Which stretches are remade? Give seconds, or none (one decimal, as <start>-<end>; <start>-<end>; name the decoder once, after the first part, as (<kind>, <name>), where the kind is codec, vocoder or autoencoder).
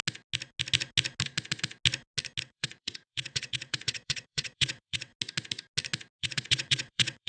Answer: 2.4-5.1 (vocoder, WaveNeXt); 6.2-7.3